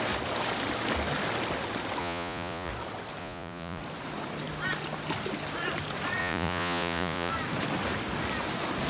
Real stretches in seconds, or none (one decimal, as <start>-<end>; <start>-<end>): 0.0-2.0; 2.7-3.2; 3.8-6.2; 7.3-8.9